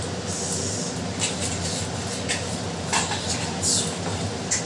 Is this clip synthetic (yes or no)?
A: no